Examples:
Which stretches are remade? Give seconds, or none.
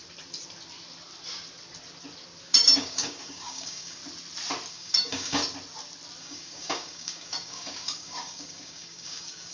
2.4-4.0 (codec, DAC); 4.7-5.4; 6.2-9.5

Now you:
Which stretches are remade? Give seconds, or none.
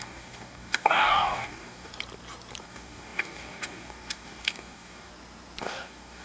0.0-1.9 (codec, DAC); 2.6-5.1; 5.6-6.2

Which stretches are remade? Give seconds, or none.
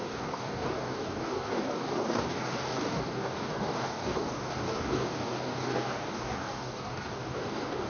0.0-7.9 (codec, DAC)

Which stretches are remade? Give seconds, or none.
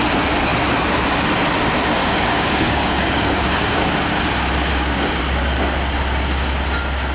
2.0-3.9 (codec, DAC); 4.7-5.2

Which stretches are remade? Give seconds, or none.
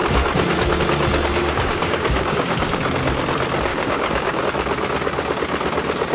1.4-2.9 (codec, DAC); 3.7-4.4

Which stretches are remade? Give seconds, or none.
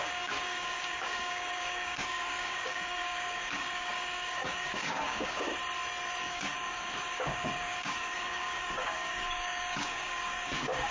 0.0-5.6 (codec, DAC); 6.2-10.9